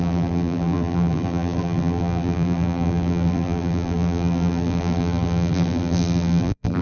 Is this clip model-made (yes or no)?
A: yes